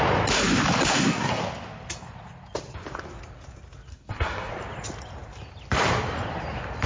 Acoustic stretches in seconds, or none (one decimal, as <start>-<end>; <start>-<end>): 0.0-0.9; 1.4-3.9; 4.5-6.9